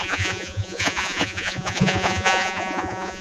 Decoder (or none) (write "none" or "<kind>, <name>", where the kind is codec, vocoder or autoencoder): vocoder, Vocos